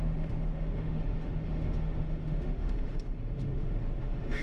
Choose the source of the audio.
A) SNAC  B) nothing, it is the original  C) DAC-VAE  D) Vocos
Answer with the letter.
C